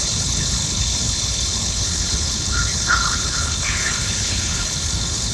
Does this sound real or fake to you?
fake